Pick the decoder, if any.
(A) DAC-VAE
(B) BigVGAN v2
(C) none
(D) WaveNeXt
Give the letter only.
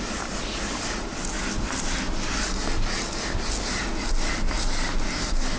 C